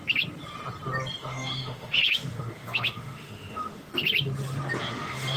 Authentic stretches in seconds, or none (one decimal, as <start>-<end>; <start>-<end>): 0.0-1.2; 3.9-4.8